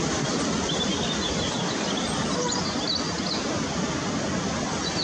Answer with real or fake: real